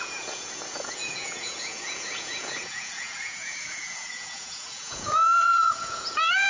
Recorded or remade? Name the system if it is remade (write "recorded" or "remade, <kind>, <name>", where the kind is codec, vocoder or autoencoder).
remade, vocoder, Vocos